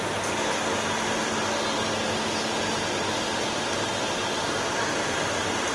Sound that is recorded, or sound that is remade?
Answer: recorded